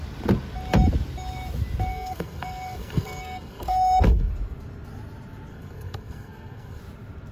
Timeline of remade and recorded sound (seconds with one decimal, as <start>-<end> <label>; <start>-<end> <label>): 0.0-1.9 recorded; 1.9-4.3 remade; 4.3-5.5 recorded; 5.5-6.8 remade; 6.8-7.3 recorded